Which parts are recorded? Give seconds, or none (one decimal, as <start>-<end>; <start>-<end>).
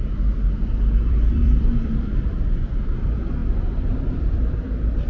0.0-0.6; 2.3-3.4